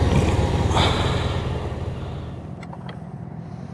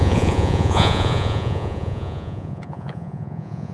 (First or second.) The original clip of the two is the first